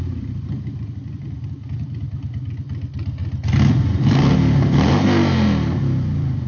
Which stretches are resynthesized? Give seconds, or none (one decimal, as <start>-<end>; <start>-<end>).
0.0-3.2; 3.9-6.5